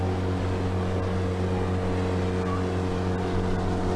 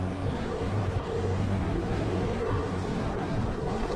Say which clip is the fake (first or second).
second